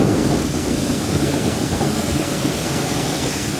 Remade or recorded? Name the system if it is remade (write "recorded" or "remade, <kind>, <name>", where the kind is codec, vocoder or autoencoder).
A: remade, codec, SNAC